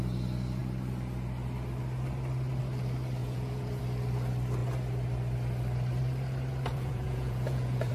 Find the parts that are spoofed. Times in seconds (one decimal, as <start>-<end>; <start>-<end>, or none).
3.2-3.8; 6.7-7.9